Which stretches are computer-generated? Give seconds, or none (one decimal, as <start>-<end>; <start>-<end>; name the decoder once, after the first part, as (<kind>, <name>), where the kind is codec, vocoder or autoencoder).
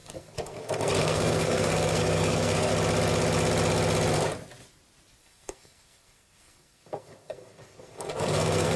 0.0-2.7 (codec, SNAC); 5.2-8.8